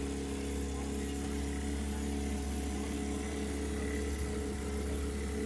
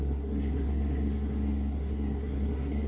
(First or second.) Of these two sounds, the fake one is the second